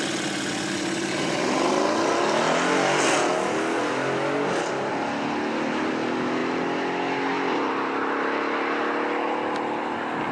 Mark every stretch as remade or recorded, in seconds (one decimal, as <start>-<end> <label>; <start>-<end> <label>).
0.0-10.3 recorded